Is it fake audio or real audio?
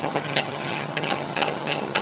fake